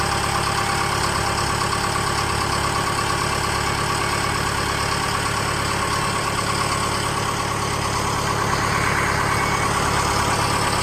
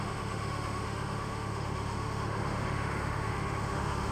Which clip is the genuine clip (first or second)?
first